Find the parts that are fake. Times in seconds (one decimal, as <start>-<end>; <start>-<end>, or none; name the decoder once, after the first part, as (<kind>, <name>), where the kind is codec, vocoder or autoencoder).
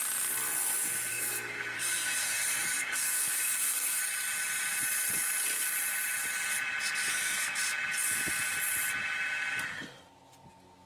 1.1-4.0 (codec, SNAC); 7.1-7.6